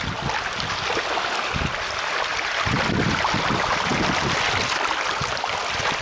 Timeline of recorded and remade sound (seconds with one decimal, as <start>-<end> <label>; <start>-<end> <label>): 0.0-6.0 recorded